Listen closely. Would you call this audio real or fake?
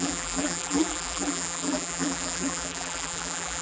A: fake